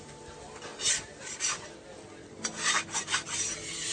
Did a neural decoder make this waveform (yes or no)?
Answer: no